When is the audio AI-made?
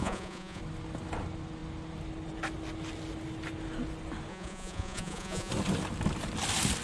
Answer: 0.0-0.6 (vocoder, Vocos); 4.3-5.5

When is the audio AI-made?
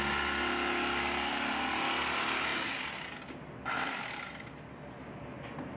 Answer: none